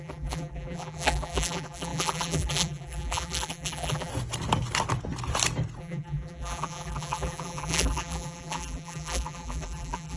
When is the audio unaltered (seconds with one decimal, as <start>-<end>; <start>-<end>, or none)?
4.1-5.8

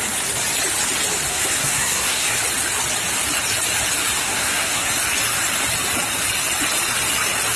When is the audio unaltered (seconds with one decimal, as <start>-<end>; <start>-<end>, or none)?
0.0-1.3; 2.4-4.2; 4.9-7.6

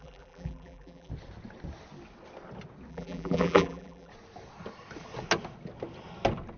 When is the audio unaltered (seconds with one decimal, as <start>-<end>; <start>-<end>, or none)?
1.1-2.9; 4.1-6.6

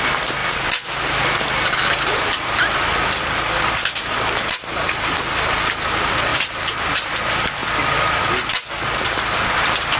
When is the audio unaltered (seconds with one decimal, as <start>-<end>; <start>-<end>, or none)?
7.6-8.2

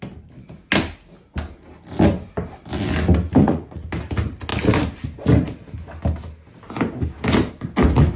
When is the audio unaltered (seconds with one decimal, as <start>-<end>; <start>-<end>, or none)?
0.0-3.4; 3.9-8.2

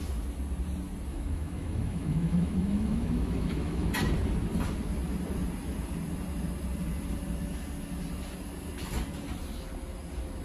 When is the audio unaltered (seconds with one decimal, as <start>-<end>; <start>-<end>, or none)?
0.0-1.1; 3.9-10.4